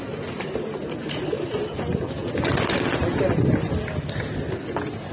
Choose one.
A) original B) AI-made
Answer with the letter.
A